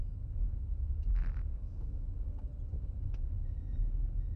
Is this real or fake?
real